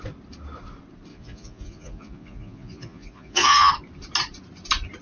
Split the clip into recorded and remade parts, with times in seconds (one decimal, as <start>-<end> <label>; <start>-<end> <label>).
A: 0.0-1.1 recorded; 1.1-3.7 remade; 3.7-5.0 recorded